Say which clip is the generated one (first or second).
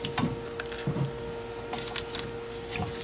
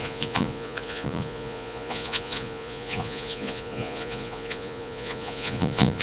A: second